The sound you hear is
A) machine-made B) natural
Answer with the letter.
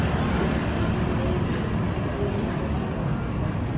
B